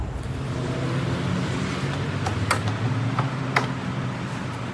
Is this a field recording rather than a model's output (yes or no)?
yes